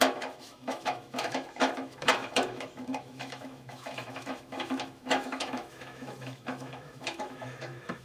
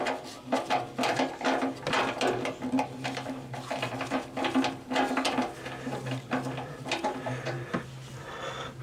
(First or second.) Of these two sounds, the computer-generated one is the first